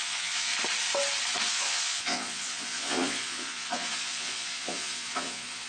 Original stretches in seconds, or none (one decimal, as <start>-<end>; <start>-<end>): 0.5-1.5